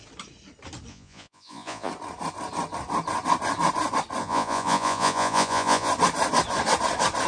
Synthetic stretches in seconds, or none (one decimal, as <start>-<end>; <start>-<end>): 0.9-1.9; 4.2-5.9